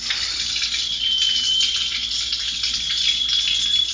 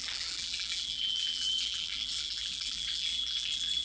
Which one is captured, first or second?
first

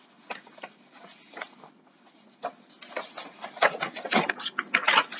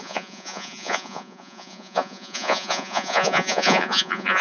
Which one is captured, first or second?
first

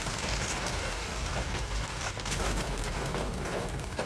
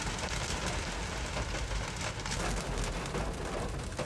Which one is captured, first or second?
second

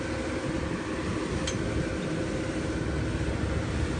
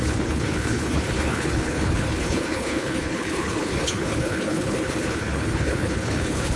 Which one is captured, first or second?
first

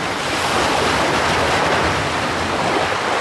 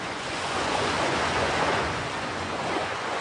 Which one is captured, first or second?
first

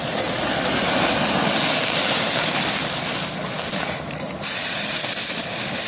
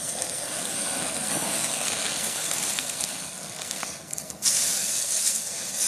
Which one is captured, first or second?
first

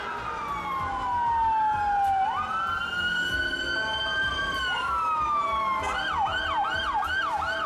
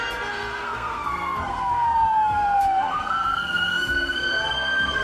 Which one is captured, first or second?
first